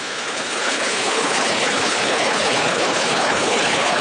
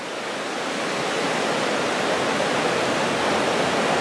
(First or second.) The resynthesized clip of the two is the first